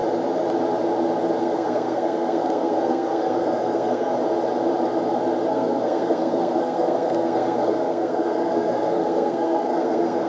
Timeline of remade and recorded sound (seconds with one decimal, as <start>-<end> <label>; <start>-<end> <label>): 0.0-1.4 recorded; 1.4-4.1 remade; 4.1-5.5 recorded; 5.5-10.3 remade